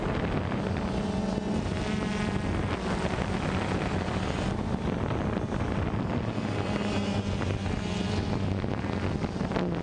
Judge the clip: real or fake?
real